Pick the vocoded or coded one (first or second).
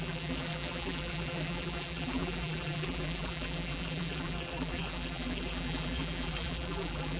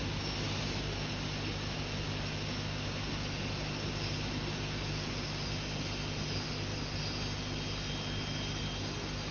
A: first